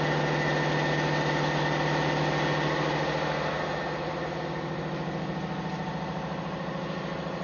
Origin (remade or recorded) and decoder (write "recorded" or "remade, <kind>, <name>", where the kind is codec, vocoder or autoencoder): recorded